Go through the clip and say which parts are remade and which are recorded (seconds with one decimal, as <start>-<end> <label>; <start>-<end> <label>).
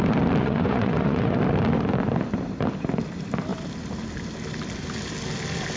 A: 0.0-0.4 recorded; 0.4-1.4 remade; 1.4-5.8 recorded